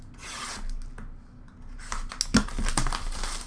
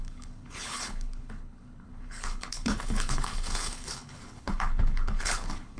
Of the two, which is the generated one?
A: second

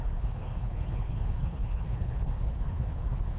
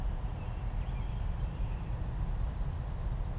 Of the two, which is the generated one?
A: first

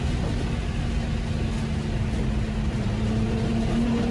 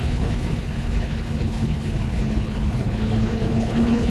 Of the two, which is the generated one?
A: second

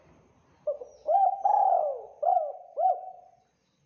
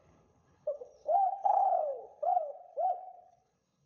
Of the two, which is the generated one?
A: second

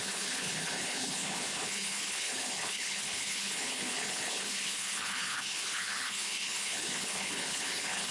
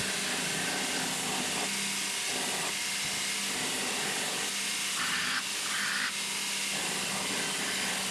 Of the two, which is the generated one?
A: first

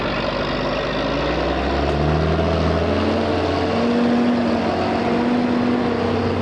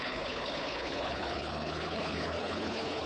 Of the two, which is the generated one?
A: second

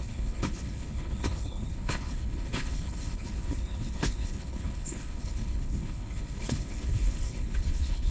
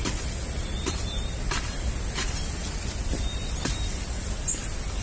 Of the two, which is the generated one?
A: first